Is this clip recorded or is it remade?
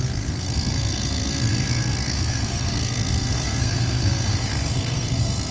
remade